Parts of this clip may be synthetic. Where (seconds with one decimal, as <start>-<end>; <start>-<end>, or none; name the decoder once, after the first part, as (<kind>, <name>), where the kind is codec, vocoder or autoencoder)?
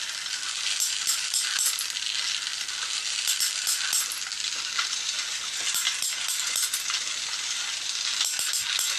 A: none